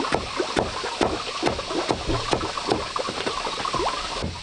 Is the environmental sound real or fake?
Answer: real